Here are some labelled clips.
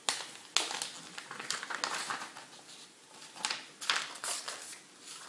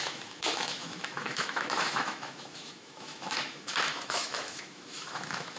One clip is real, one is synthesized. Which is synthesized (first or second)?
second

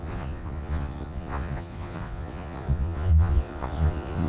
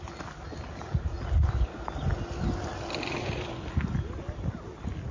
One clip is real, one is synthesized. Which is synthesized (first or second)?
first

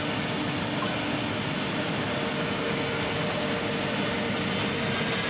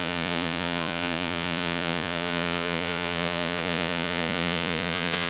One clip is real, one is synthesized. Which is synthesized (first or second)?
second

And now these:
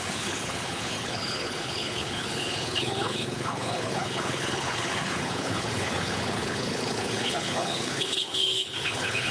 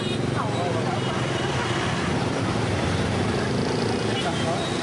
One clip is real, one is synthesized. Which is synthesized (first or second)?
first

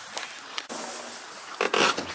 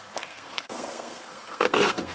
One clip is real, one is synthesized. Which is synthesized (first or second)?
second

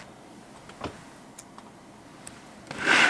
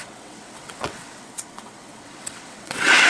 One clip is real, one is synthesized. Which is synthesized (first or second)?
second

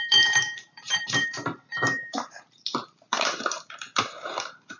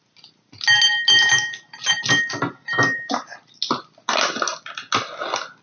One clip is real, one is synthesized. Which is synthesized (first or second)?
first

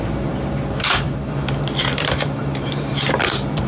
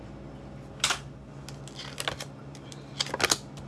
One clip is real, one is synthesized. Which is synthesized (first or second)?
first